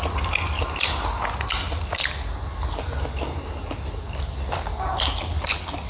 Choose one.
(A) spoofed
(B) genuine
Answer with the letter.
B